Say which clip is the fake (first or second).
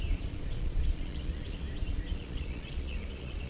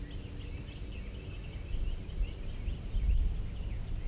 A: first